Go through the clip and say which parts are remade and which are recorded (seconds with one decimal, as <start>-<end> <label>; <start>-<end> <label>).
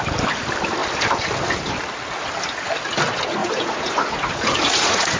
0.0-3.4 recorded; 3.4-5.2 remade